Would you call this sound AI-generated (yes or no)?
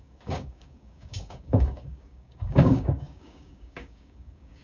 yes